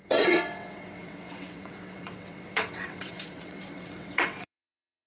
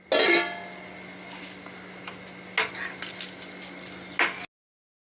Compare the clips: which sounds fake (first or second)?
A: first